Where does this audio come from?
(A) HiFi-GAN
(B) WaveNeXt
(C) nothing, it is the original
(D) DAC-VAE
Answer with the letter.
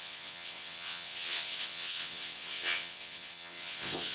B